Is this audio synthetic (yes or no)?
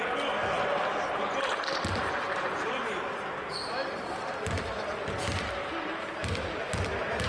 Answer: no